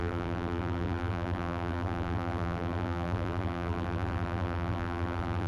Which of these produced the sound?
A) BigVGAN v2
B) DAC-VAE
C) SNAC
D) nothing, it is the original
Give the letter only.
A